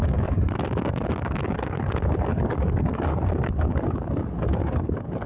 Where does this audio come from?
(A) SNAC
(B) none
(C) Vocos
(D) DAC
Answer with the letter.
D